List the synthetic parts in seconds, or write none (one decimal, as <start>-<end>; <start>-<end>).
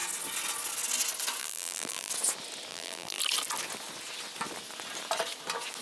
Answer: 1.4-2.1; 2.7-3.2